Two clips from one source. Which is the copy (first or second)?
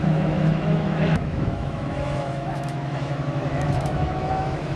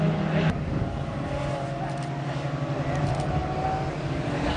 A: first